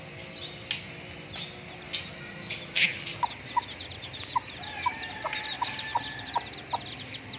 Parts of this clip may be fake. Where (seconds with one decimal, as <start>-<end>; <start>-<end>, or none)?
none